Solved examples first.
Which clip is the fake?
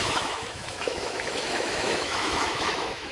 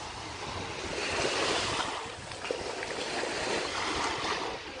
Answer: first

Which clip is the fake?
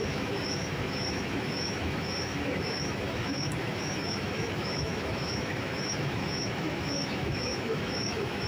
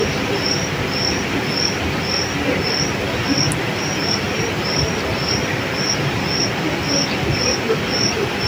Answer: first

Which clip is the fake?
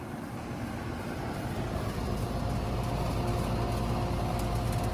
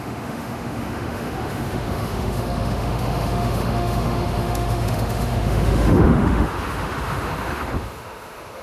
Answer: second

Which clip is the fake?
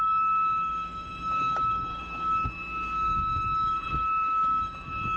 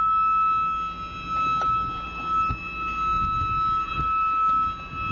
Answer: first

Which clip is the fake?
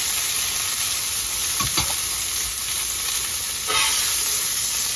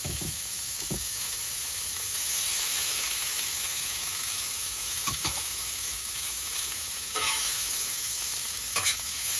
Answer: second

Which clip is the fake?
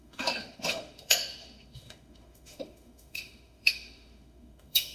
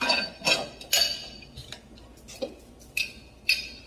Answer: first